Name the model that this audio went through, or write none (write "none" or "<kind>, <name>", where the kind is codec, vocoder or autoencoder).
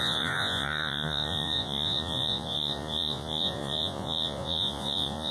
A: vocoder, Vocos